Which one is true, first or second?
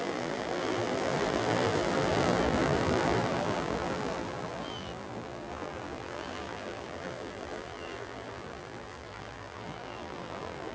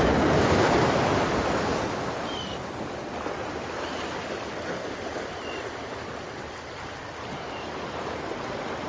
second